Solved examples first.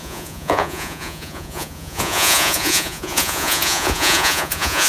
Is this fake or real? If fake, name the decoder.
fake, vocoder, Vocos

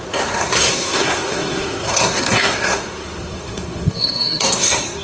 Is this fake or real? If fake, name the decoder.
fake, codec, SNAC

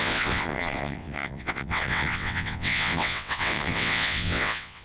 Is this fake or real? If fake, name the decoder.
fake, vocoder, WaveNeXt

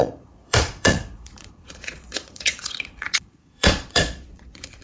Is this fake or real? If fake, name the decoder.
fake, vocoder, Vocos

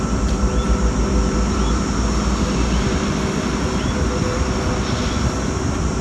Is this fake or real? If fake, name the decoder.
real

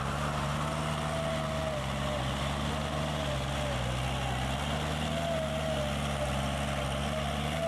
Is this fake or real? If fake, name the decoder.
real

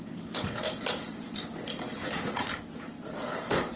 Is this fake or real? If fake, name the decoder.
fake, vocoder, BigVGAN v2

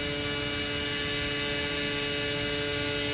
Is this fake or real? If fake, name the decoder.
real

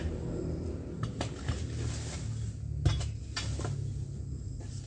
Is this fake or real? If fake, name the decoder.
real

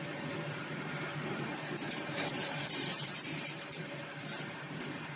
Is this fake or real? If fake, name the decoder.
fake, vocoder, BigVGAN v2